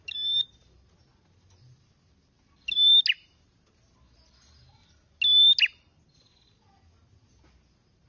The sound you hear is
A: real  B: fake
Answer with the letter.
A